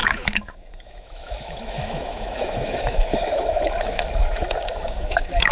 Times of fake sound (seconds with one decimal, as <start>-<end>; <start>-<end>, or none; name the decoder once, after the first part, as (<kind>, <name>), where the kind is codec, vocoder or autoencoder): 0.0-5.5 (autoencoder, DAC-VAE)